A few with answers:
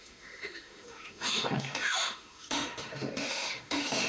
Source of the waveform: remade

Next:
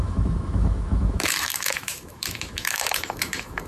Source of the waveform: remade